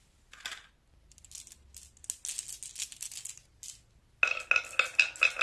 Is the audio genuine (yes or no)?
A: yes